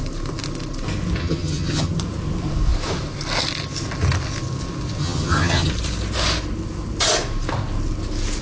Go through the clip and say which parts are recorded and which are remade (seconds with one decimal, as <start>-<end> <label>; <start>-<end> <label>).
0.0-1.2 recorded; 1.2-1.9 remade; 1.9-5.0 recorded; 5.0-5.7 remade; 5.7-8.4 recorded

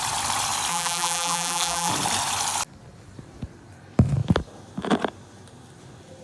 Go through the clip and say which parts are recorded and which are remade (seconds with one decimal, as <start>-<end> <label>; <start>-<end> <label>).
0.0-0.7 recorded; 0.7-1.9 remade; 1.9-6.2 recorded

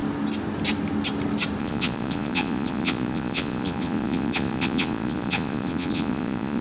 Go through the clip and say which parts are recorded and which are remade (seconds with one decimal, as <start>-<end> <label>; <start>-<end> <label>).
0.0-1.6 recorded; 1.6-6.6 remade

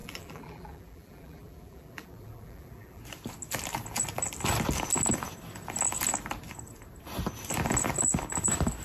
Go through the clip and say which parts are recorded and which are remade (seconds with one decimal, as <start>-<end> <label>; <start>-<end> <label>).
0.0-3.0 remade; 3.0-8.8 recorded

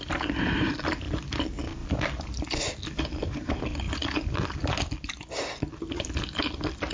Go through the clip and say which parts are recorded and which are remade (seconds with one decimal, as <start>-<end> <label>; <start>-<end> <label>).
0.0-6.9 recorded

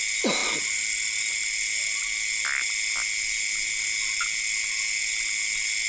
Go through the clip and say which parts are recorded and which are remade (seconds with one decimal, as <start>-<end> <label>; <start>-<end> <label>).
0.0-5.9 recorded